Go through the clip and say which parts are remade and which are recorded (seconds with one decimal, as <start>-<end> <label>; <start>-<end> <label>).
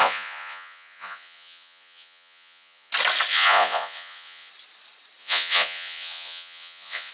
0.0-2.9 remade; 2.9-3.3 recorded; 3.3-4.5 remade; 4.5-5.2 recorded; 5.2-7.1 remade